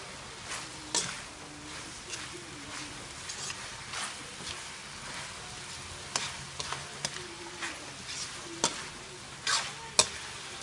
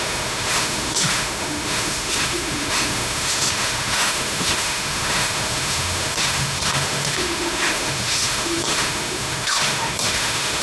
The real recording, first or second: first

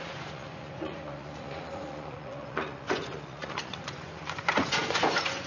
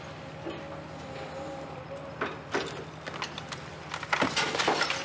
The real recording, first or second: second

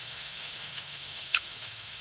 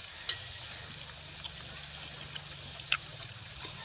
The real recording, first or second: second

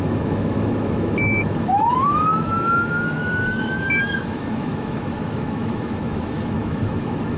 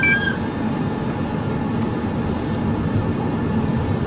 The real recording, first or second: second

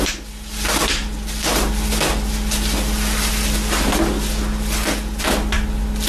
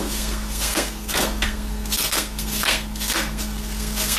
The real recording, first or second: first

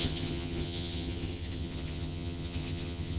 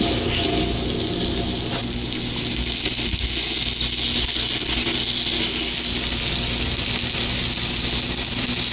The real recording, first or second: second